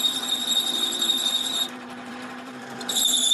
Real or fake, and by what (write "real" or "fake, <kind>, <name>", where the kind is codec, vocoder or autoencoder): fake, vocoder, BigVGAN v2